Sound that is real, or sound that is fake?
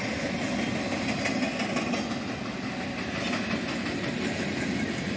real